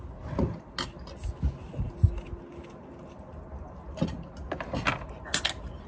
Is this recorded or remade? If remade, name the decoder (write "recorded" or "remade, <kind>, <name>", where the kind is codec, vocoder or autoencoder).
recorded